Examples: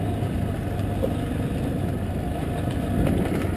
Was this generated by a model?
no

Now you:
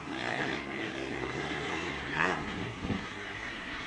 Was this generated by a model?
yes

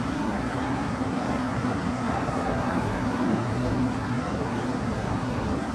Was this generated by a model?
yes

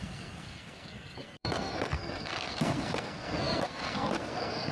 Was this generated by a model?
yes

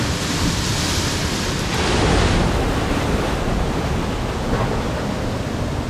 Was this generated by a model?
no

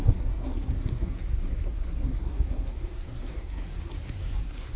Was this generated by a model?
yes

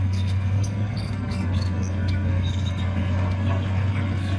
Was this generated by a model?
yes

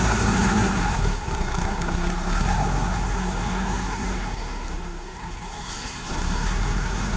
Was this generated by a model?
yes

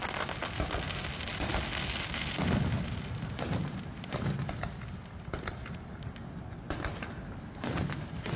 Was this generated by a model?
no